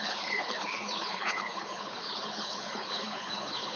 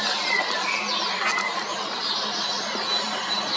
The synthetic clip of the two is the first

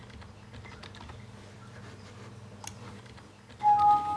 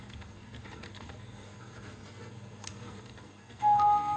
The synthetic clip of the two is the second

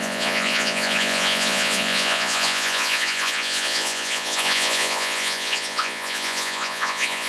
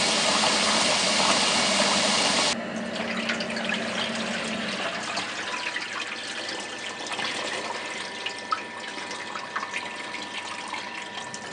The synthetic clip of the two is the first